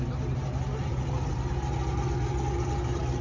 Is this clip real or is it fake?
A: real